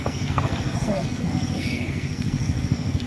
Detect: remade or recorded remade